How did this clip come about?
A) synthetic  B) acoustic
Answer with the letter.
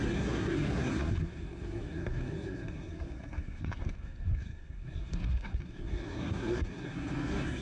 A